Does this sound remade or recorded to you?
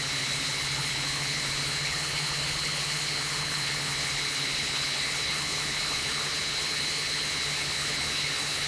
remade